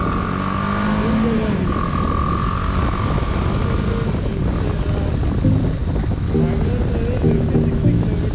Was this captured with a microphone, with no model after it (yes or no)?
yes